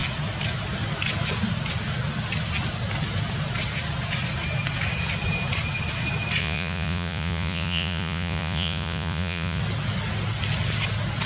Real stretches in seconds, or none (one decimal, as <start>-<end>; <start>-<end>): 0.0-6.4; 9.6-11.3